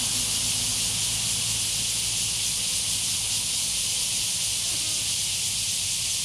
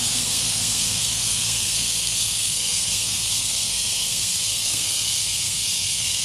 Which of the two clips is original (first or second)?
first